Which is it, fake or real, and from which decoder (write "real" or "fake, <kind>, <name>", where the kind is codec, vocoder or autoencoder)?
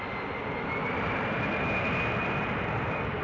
real